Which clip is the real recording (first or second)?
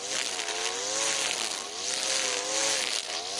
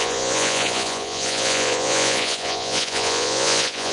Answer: first